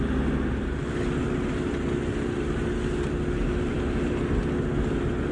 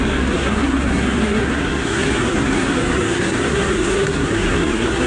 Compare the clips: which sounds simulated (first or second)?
second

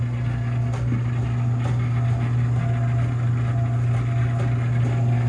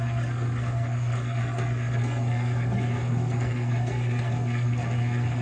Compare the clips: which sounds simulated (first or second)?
second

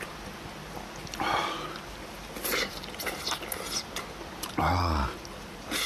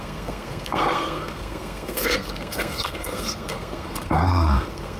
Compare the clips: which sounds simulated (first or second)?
second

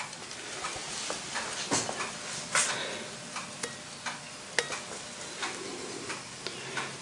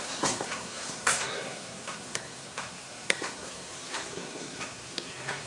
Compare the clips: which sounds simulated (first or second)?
second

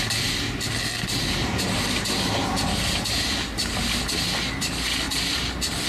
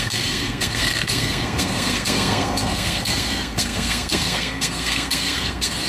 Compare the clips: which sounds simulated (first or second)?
second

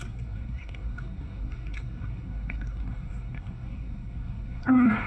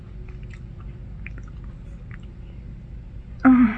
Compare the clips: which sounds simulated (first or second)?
first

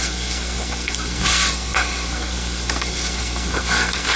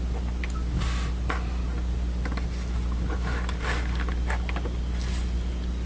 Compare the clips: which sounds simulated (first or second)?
first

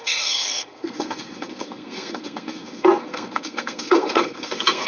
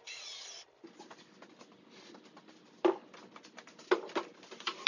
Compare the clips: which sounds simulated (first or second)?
first